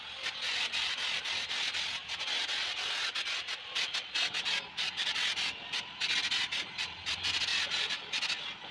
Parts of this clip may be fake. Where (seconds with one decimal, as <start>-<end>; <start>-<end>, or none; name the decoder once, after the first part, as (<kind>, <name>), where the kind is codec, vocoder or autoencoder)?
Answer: none

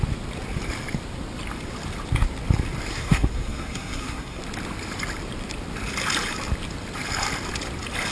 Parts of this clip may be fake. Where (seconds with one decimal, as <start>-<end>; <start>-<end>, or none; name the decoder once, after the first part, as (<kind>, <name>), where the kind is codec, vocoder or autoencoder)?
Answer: 2.9-4.4 (codec, SNAC)

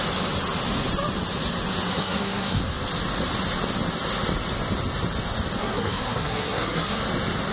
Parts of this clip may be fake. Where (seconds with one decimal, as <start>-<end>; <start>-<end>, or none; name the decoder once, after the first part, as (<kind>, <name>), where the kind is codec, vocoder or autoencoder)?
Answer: 1.9-2.6 (codec, SNAC); 5.6-7.0

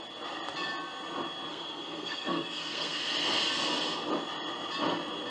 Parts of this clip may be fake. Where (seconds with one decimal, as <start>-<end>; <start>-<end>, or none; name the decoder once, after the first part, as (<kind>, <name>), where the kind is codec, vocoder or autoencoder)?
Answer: 1.5-3.0 (codec, SNAC)

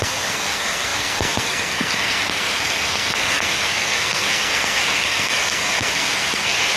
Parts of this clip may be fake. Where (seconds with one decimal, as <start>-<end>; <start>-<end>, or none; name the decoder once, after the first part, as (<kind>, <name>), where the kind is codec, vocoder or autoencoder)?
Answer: 0.0-6.8 (codec, SNAC)

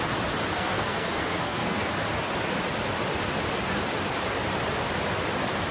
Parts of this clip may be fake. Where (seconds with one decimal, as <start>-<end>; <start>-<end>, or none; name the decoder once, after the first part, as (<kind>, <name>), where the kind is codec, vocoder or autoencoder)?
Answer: 0.5-2.0 (codec, SNAC)